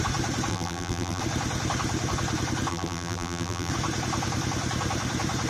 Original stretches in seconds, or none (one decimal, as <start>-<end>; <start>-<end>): 0.0-0.5; 1.2-2.7; 3.7-5.5